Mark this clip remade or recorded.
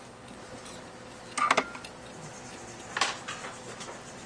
recorded